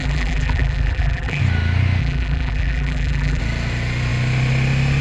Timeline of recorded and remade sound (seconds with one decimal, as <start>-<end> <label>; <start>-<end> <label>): 0.0-1.4 remade; 1.4-2.0 recorded; 2.0-3.4 remade; 3.4-5.0 recorded